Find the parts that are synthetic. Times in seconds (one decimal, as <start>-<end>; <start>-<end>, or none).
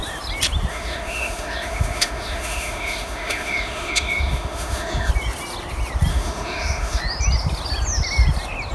0.7-5.1; 6.1-7.0